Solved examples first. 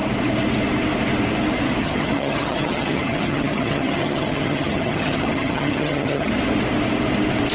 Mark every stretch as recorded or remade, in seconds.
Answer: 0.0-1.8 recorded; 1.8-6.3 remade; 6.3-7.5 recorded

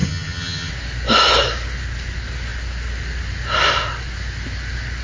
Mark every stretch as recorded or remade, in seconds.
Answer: 0.0-0.7 remade; 0.7-5.0 recorded

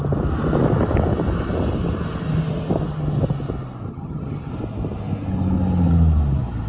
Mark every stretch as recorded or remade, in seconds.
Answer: 0.0-3.9 recorded; 3.9-4.5 remade; 4.5-6.7 recorded

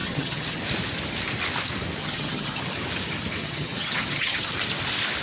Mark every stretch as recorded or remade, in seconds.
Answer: 0.0-0.6 remade; 0.6-2.0 recorded; 2.0-2.6 remade; 2.6-3.4 recorded; 3.4-4.5 remade; 4.5-5.2 recorded

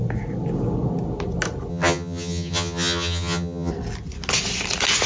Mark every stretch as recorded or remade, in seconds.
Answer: 0.0-1.7 recorded; 1.7-3.7 remade; 3.7-5.1 recorded

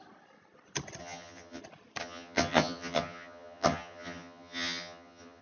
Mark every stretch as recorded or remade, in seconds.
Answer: 0.0-1.0 recorded; 1.0-1.6 remade; 1.6-2.0 recorded; 2.0-5.4 remade